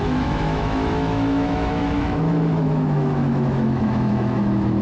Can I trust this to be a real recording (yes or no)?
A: no